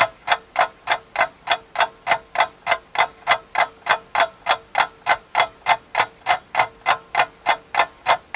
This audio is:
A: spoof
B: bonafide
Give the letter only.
B